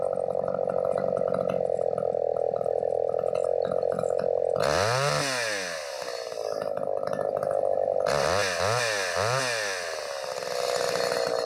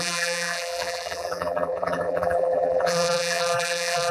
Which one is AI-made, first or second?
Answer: second